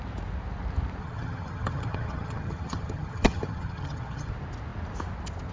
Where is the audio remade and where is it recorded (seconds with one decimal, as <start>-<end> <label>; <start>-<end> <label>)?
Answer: 0.0-1.0 recorded; 1.0-4.3 remade; 4.3-5.5 recorded